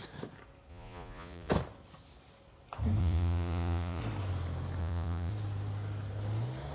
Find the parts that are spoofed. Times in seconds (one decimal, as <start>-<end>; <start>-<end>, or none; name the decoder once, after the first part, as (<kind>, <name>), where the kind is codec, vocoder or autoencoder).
0.7-1.5 (vocoder, Vocos); 3.0-4.0; 4.8-5.3